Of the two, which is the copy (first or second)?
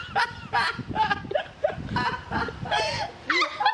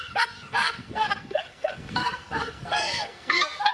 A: second